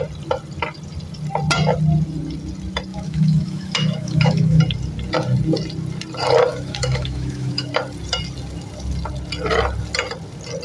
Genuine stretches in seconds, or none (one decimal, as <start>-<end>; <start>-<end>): 0.0-2.9; 4.6-6.5; 7.7-10.6